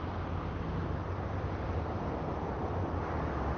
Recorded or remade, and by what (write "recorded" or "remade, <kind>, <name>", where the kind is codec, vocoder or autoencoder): recorded